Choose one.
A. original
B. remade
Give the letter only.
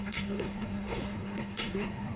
B